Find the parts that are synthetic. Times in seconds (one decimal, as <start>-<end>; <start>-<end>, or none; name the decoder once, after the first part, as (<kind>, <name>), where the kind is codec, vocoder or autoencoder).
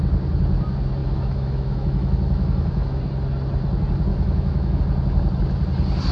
1.0-3.0 (autoencoder, DAC-VAE); 4.1-4.8